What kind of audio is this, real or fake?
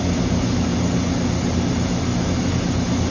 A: real